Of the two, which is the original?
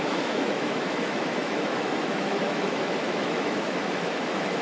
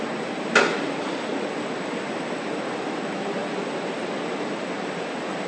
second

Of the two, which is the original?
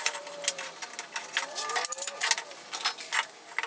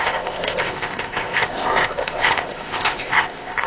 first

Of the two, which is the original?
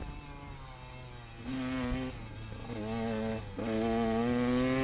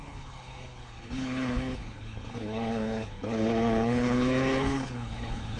first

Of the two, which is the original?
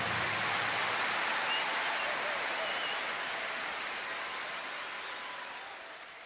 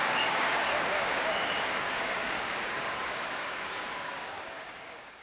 first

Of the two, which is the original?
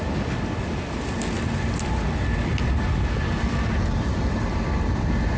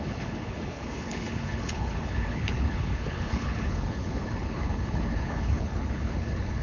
first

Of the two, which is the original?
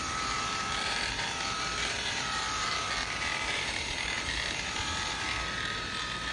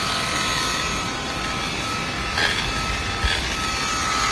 second